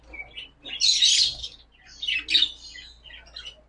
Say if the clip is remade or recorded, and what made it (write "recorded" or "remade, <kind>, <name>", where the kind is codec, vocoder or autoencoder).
recorded